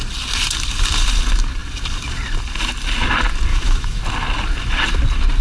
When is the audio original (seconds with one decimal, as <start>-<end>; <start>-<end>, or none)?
0.0-3.5; 4.0-5.4